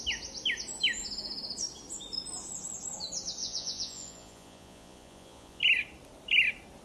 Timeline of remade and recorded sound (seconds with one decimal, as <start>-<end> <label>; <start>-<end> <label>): 0.0-3.4 recorded; 3.4-5.6 remade; 5.6-6.8 recorded